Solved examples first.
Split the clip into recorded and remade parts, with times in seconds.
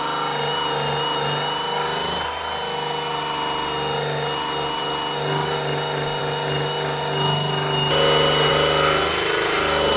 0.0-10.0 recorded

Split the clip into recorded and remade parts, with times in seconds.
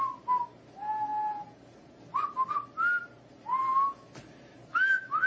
0.0-4.7 recorded; 4.7-5.3 remade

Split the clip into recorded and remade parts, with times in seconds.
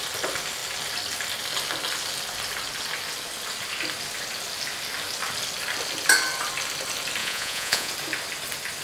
0.0-7.2 recorded; 7.2-7.9 remade; 7.9-8.8 recorded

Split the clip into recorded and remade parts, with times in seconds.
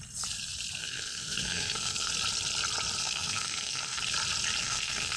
0.0-0.8 recorded; 0.8-2.1 remade; 2.1-3.0 recorded; 3.0-4.0 remade; 4.0-4.6 recorded; 4.6-5.2 remade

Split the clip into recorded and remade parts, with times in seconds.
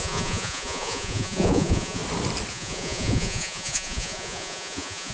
0.0-2.0 remade; 2.0-2.5 recorded; 2.5-5.1 remade